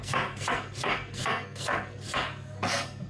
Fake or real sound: fake